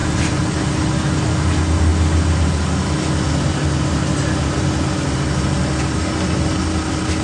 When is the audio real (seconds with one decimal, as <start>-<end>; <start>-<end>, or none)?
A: 0.0-7.2

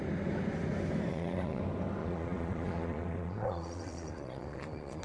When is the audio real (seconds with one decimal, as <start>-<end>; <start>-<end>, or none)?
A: 0.0-1.1; 1.6-2.0

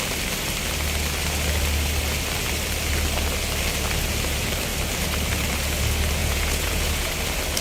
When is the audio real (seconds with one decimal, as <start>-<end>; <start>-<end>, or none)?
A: 0.0-6.2; 7.1-7.6

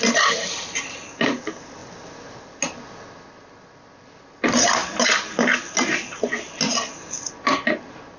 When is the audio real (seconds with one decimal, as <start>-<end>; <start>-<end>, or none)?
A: 0.0-8.2

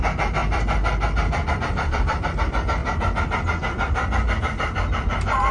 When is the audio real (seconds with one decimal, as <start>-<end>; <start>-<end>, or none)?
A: 2.8-4.4

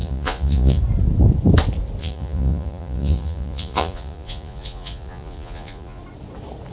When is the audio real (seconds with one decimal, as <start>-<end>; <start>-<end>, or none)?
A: 0.8-2.0; 6.0-6.7